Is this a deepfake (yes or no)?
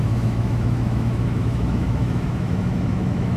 yes